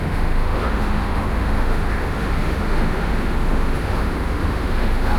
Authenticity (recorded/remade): remade